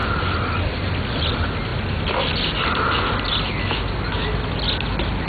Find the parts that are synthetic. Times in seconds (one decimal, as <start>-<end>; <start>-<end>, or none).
none